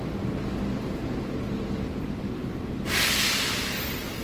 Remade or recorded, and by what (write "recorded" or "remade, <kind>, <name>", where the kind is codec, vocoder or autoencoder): recorded